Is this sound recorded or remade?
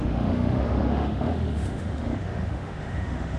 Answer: remade